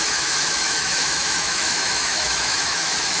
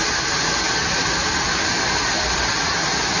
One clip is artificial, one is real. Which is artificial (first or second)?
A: first